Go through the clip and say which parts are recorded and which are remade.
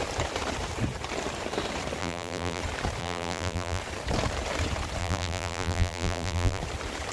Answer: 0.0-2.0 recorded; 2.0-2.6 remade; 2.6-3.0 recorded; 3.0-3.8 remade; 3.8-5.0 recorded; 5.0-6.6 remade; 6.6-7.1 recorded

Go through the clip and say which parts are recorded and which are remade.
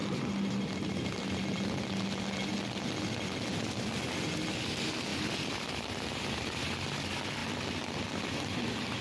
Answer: 0.0-5.1 recorded; 5.1-5.7 remade; 5.7-9.0 recorded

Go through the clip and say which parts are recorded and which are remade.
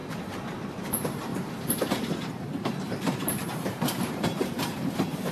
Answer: 0.0-5.3 remade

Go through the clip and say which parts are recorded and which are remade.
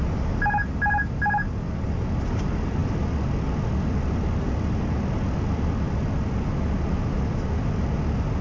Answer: 0.0-8.4 recorded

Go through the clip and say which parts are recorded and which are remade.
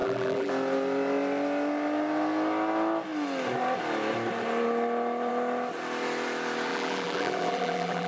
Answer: 0.0-0.5 remade; 0.5-6.7 recorded; 6.7-8.1 remade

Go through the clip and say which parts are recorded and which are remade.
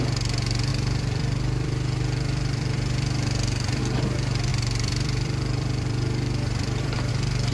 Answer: 0.0-0.7 recorded; 0.7-3.8 remade; 3.8-4.5 recorded; 4.5-7.1 remade; 7.1-7.5 recorded